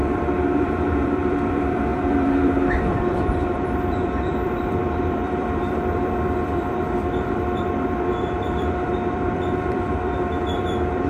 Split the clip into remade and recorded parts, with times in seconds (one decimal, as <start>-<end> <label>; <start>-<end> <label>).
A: 0.0-11.1 remade